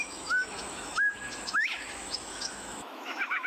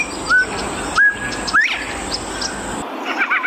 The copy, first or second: first